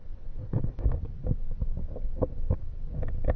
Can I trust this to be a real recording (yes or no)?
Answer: yes